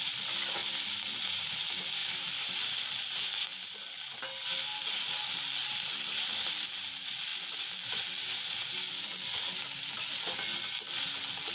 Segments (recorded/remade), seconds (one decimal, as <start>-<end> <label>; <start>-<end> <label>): 0.0-11.5 recorded